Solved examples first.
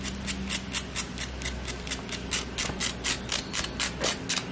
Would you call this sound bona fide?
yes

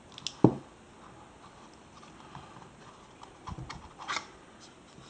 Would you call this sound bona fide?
yes